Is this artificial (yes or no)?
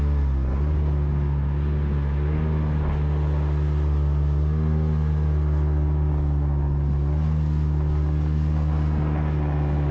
no